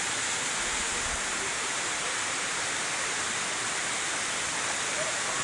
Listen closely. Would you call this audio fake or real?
real